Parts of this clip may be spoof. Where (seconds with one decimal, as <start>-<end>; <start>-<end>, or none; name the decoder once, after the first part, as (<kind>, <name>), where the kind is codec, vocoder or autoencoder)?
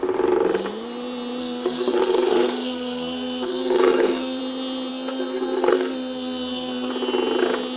1.4-4.4 (codec, SNAC); 4.9-6.9